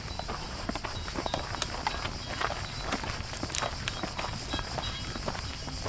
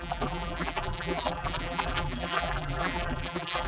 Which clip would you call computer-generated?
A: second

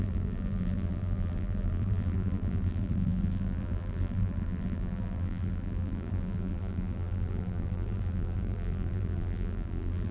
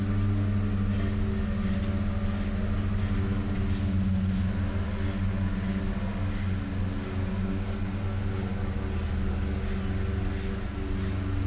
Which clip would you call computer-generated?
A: first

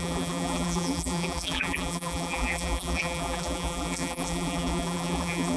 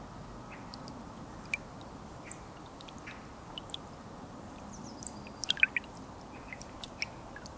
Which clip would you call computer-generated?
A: first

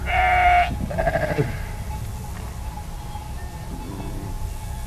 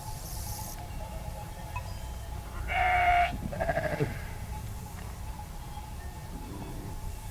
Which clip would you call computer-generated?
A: second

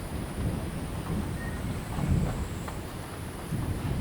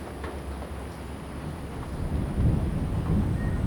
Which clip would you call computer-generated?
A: first